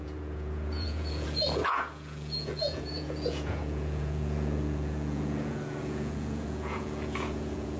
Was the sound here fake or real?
fake